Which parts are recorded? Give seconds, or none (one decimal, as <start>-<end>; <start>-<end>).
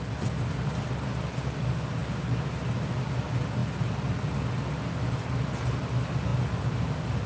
0.0-7.3